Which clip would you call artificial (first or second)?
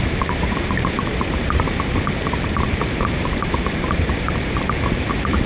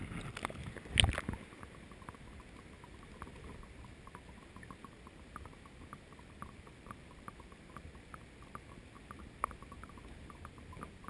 first